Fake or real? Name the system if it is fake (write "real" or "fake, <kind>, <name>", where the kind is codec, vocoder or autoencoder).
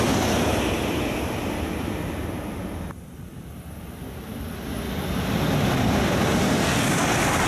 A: real